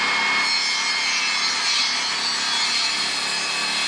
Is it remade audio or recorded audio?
recorded